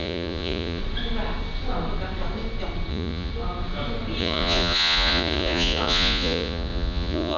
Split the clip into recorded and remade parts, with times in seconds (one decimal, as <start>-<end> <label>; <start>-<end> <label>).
0.0-0.8 remade; 0.8-2.9 recorded; 2.9-3.3 remade; 3.3-4.2 recorded; 4.2-7.4 remade